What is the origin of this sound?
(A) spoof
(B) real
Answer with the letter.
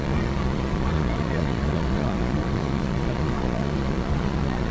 A